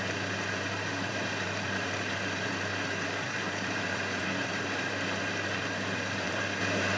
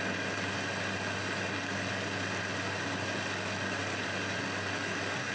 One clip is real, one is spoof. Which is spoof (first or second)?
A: first